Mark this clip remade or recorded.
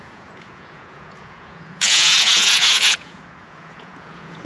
remade